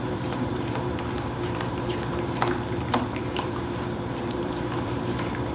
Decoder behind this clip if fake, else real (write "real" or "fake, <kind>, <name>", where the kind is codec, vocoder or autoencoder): fake, vocoder, BigVGAN v2